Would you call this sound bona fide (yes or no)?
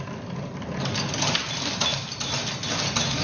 yes